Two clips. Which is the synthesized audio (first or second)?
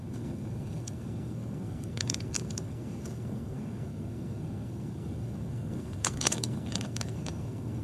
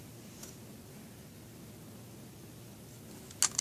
first